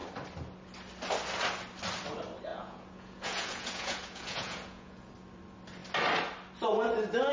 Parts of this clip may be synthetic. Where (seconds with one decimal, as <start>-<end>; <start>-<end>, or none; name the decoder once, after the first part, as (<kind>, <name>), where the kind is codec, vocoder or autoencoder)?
2.5-5.1 (vocoder, Vocos)